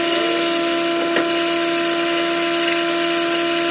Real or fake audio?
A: real